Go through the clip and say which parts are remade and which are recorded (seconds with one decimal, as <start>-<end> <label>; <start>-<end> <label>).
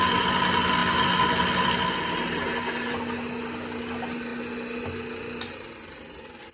0.0-6.5 recorded